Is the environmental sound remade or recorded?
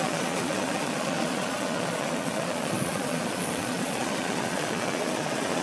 remade